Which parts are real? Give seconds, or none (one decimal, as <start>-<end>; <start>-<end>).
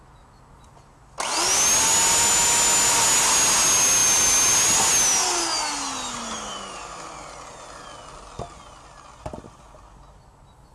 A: 0.0-10.7